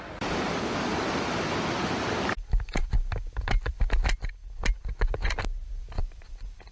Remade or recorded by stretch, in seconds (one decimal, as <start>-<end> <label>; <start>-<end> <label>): 0.0-6.0 recorded; 6.0-6.7 remade